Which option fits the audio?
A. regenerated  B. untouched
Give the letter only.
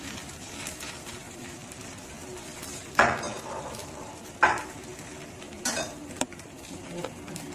A